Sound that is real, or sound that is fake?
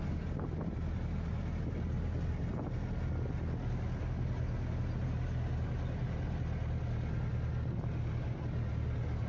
real